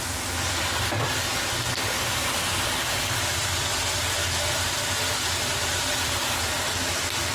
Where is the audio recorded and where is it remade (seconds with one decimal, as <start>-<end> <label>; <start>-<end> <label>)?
0.0-1.3 remade; 1.3-3.4 recorded; 3.4-4.2 remade; 4.2-4.7 recorded; 4.7-7.3 remade